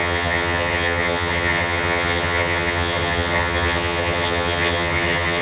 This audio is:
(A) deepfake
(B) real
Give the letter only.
A